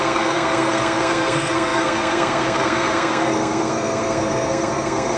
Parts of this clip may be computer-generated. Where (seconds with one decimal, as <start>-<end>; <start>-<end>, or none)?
0.0-5.2